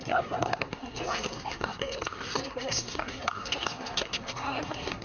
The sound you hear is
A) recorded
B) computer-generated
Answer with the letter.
B